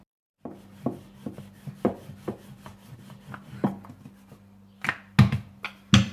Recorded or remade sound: recorded